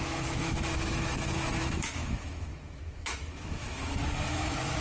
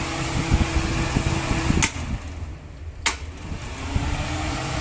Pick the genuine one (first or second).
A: second